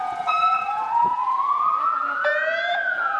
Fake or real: fake